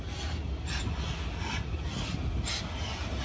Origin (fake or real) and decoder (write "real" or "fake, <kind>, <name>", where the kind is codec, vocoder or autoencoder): real